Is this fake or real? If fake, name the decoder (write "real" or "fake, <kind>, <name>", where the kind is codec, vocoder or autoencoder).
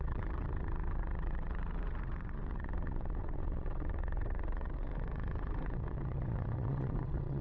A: fake, vocoder, WaveNeXt